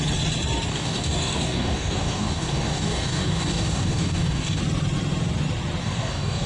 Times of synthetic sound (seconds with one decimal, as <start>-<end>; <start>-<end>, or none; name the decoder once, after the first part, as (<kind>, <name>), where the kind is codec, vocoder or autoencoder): 0.7-4.6 (codec, DAC); 5.8-6.5